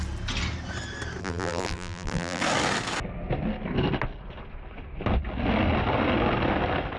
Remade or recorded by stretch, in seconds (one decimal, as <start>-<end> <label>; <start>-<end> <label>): 0.0-1.2 recorded; 1.2-2.4 remade; 2.4-7.0 recorded